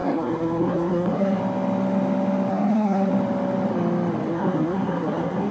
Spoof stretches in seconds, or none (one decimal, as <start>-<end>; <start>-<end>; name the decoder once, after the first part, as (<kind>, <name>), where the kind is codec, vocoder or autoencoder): 0.0-1.4 (codec, SNAC); 2.5-3.1; 4.3-5.5